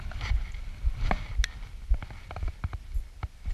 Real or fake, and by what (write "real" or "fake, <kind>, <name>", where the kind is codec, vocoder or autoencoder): real